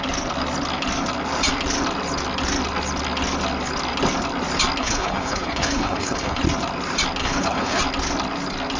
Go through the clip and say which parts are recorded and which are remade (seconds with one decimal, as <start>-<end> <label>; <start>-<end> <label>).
0.0-4.8 recorded; 4.8-6.4 remade; 6.4-7.2 recorded; 7.2-7.8 remade; 7.8-8.8 recorded